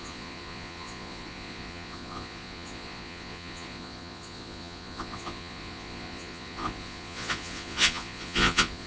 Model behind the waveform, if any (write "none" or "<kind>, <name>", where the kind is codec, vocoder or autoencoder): vocoder, Vocos